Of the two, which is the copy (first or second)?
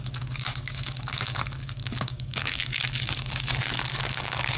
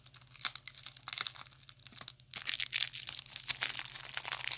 first